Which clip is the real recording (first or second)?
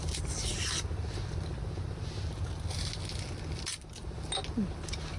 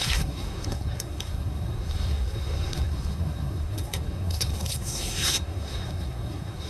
first